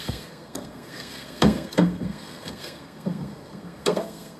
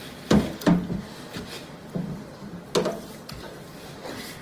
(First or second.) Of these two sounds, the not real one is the first